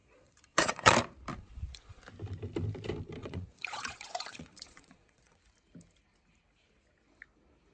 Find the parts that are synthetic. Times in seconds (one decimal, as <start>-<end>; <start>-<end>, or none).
0.0-0.9; 1.3-2.0; 3.2-5.4